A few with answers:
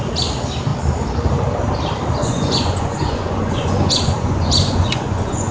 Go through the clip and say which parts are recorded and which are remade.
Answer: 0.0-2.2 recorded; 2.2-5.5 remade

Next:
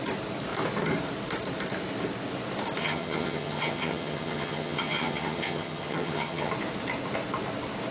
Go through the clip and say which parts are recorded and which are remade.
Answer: 0.0-2.8 recorded; 2.8-6.5 remade; 6.5-7.9 recorded

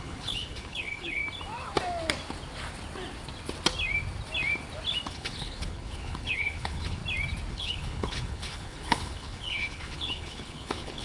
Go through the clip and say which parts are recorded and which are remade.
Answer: 0.0-1.2 remade; 1.2-5.1 recorded; 5.1-7.0 remade; 7.0-7.5 recorded; 7.5-11.0 remade